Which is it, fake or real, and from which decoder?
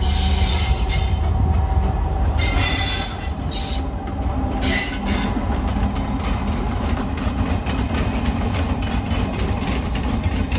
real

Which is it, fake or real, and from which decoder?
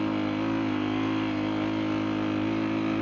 real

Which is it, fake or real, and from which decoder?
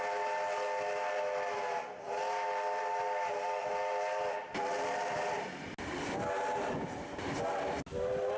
real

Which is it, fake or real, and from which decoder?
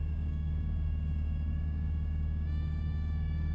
fake, codec, DAC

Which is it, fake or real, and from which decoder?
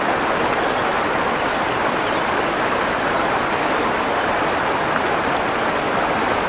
real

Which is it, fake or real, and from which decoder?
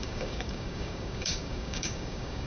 fake, codec, DAC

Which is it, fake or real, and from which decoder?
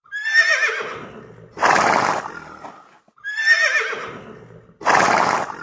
real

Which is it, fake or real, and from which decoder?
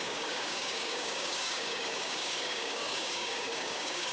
fake, codec, DAC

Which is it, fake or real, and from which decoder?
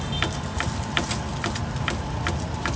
real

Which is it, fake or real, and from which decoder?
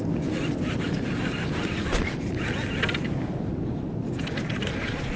real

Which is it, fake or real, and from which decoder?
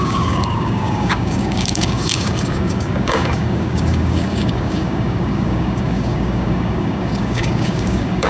fake, codec, DAC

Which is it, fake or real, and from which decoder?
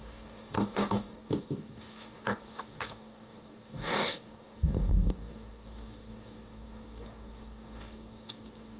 fake, codec, DAC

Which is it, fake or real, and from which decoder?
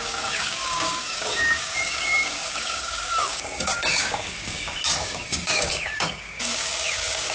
fake, codec, DAC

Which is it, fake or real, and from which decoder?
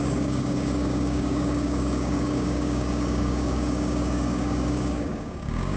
fake, codec, DAC